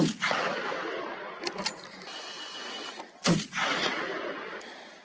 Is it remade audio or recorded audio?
recorded